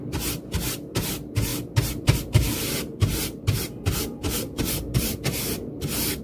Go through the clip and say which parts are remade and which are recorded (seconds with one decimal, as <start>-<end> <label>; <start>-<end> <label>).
0.0-3.1 recorded; 3.1-6.2 remade